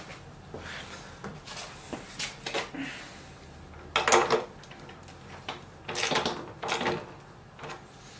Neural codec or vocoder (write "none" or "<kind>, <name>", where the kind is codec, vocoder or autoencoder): none